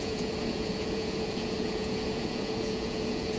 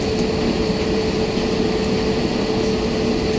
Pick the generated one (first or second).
first